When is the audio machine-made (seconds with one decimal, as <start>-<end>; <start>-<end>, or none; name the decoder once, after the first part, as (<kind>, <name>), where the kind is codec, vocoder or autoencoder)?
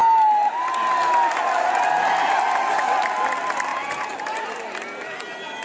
none